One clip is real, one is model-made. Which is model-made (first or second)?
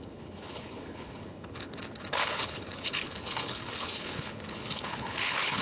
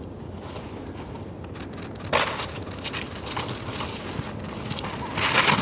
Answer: first